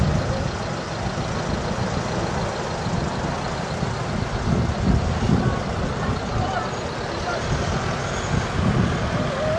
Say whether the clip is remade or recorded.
recorded